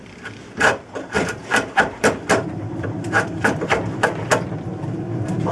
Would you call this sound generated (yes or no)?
yes